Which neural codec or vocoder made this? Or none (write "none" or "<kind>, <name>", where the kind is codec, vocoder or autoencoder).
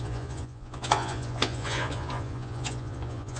vocoder, Vocos